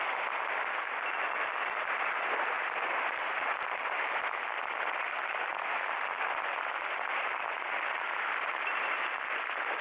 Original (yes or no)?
yes